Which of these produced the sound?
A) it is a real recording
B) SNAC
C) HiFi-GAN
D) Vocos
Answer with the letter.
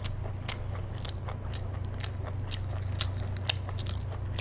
A